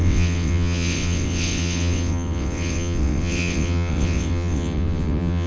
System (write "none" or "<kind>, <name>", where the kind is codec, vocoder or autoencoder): vocoder, WaveNeXt